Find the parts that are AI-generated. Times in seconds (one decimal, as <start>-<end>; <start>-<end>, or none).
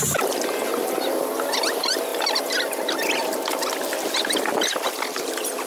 2.1-3.6